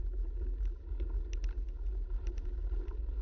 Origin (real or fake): real